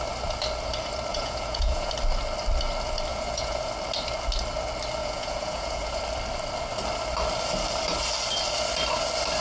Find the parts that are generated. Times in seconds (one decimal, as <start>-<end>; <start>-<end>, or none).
1.1-1.9; 3.1-3.7; 5.0-6.0